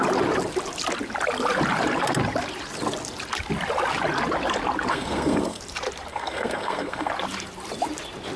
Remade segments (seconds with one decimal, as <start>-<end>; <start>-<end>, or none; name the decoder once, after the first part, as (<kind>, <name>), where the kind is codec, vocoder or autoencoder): 4.9-5.6 (codec, SNAC); 6.1-7.1